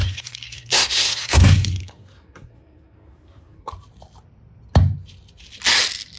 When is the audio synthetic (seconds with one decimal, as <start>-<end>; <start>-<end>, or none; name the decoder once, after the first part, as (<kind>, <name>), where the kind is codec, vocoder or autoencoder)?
0.0-3.7 (codec, SNAC)

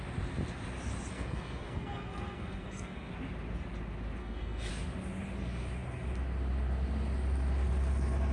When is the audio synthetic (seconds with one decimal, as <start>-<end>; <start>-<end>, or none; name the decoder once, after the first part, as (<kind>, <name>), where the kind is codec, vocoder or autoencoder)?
1.1-3.1 (codec, SNAC); 4.2-4.7

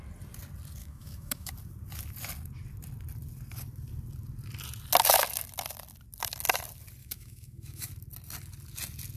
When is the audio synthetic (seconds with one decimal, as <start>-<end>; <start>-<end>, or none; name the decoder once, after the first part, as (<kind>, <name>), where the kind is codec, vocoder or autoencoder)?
0.8-1.5 (autoencoder, DAC-VAE); 7.0-7.9